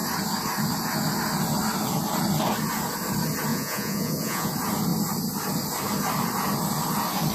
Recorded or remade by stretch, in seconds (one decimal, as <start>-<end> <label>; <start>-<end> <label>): 0.0-3.5 recorded; 3.5-4.5 remade; 4.5-7.3 recorded